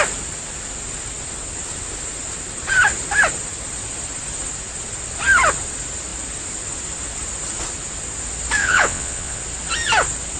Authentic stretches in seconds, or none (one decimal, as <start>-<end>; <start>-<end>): 0.0-8.6; 9.4-10.4

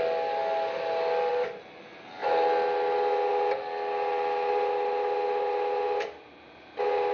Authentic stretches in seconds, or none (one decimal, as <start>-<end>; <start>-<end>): 0.0-7.1

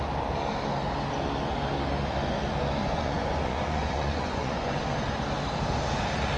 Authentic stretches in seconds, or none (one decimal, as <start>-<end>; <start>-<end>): 0.0-2.8; 4.8-6.4